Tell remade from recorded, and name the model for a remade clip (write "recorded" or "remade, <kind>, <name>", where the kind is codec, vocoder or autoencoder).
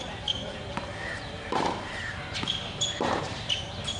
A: remade, vocoder, BigVGAN v2